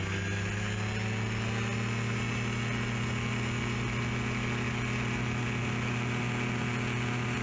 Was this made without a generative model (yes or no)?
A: yes